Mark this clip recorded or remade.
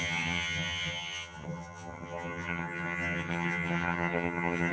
remade